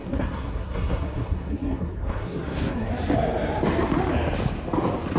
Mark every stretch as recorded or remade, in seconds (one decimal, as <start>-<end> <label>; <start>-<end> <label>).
0.0-2.9 remade; 2.9-5.2 recorded

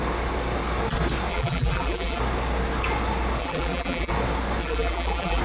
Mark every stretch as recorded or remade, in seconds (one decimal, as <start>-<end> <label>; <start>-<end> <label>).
0.0-1.3 recorded; 1.3-2.2 remade; 2.2-3.4 recorded; 3.4-4.1 remade; 4.1-4.6 recorded; 4.6-5.4 remade

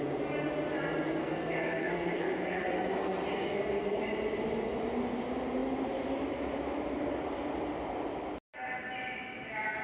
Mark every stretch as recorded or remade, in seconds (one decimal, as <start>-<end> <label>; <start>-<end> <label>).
0.0-1.2 recorded; 1.2-4.0 remade; 4.0-9.8 recorded

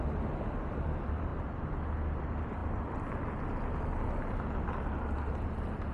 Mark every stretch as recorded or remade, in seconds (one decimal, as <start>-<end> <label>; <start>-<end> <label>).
0.0-5.9 recorded

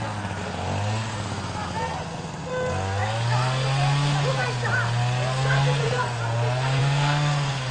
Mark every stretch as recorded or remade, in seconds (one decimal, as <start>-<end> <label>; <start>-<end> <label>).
0.0-6.8 recorded; 6.8-7.7 remade

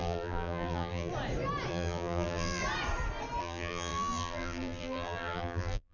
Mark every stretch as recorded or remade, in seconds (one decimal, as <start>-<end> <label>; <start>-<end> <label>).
0.0-1.1 remade; 1.1-1.7 recorded; 1.7-2.6 remade; 2.6-3.4 recorded; 3.4-5.9 remade

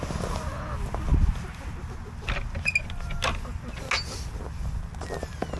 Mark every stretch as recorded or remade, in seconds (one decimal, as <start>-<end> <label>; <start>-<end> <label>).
0.0-5.6 recorded

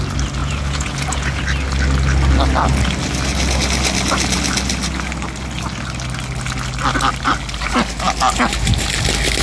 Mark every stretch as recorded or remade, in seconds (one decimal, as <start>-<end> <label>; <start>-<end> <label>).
0.0-0.4 recorded; 0.4-1.4 remade; 1.4-9.4 recorded